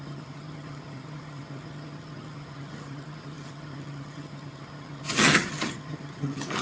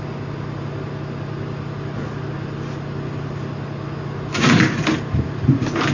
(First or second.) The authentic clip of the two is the second